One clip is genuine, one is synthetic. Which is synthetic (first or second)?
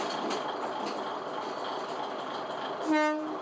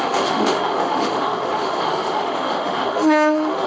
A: second